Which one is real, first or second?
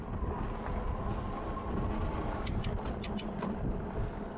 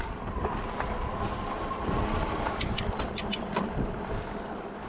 first